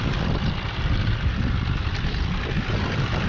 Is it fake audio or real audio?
fake